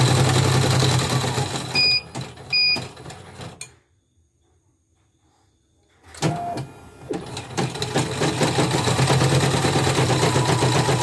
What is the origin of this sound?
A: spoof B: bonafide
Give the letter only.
B